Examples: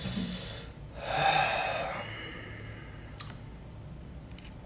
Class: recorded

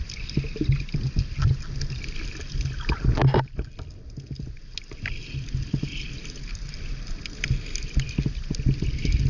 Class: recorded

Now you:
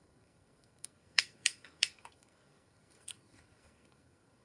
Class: remade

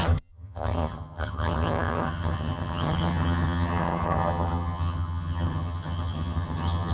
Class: remade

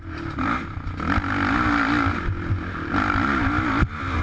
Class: recorded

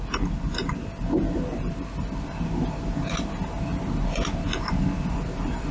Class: recorded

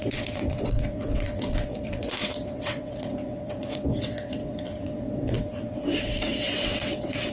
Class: remade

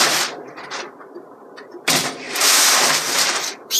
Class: remade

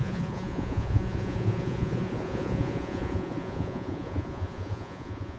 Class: remade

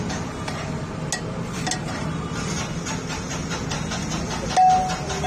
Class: recorded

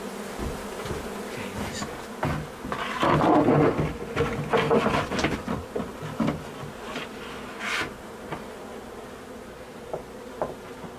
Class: recorded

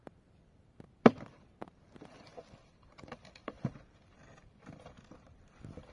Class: remade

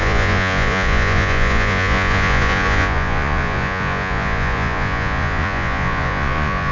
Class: remade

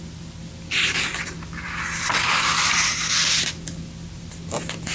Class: remade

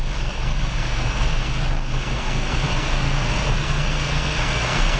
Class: remade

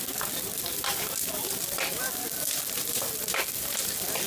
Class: recorded